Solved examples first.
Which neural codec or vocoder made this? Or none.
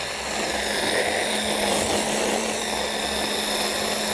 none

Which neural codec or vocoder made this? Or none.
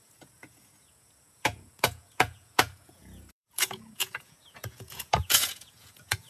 vocoder, Vocos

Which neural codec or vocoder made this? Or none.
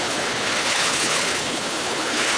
codec, HILCodec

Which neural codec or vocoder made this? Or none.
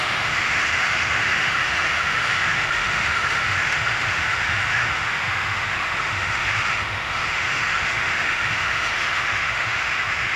autoencoder, DAC-VAE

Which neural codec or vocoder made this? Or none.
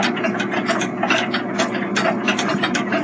none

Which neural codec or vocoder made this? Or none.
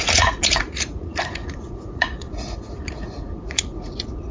vocoder, Vocos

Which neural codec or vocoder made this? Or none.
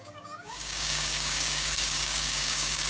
codec, DAC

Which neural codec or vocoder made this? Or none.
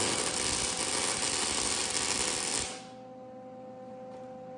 none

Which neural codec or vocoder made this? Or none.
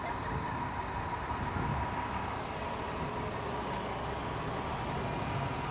none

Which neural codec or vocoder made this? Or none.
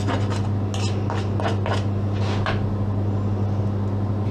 none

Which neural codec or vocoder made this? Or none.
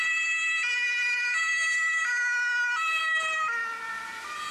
none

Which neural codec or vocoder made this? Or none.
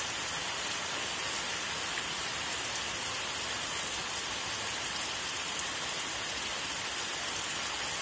none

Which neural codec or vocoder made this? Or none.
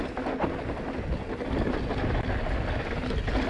none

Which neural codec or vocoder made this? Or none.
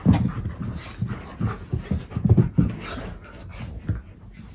none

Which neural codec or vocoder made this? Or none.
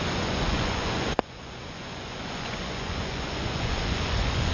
vocoder, Vocos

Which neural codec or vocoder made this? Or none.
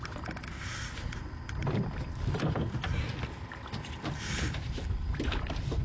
none